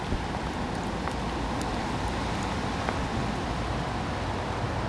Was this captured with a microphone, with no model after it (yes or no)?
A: yes